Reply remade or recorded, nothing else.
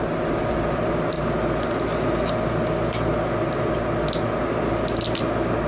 recorded